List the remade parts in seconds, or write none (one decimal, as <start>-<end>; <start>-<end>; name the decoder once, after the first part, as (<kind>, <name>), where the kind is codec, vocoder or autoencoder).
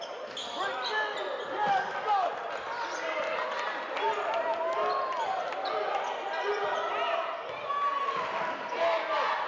none